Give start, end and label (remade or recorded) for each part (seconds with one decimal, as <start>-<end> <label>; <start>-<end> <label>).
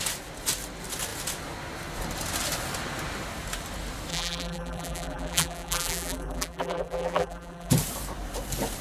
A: 0.0-4.1 recorded; 4.1-7.7 remade; 7.7-8.8 recorded